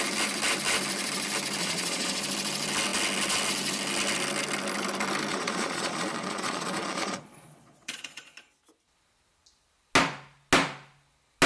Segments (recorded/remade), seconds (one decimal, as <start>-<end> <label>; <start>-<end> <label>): 0.0-1.6 recorded; 1.6-2.2 remade; 2.2-5.3 recorded; 5.3-8.4 remade; 8.4-11.5 recorded